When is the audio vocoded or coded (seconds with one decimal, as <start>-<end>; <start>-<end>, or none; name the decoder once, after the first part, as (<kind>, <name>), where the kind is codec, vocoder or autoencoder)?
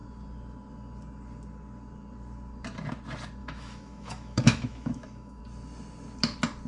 3.4-5.4 (autoencoder, DAC-VAE)